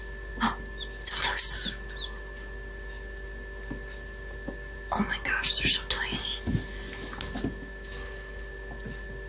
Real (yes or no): yes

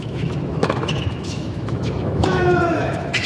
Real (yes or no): no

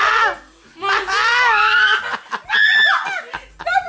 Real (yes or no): yes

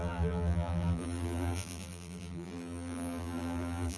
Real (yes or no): no